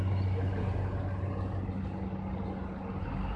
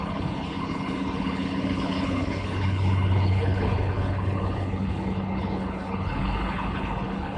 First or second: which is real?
first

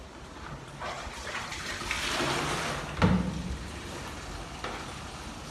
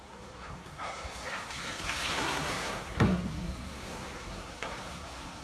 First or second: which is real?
first